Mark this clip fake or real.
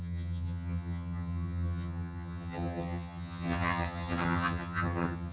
fake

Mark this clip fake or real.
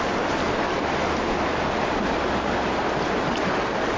real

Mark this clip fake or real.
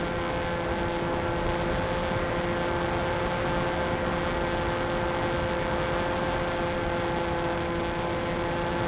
real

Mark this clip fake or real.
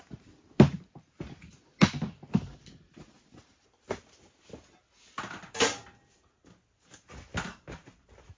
real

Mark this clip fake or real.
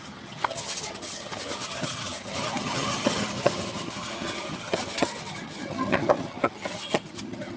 fake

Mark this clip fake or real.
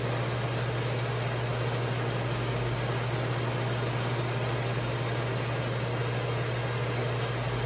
real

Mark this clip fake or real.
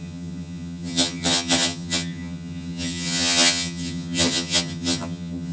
fake